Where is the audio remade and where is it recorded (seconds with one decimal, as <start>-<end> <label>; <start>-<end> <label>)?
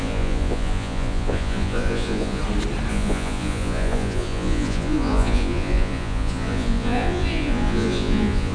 0.0-2.4 remade; 2.4-2.9 recorded; 2.9-8.5 remade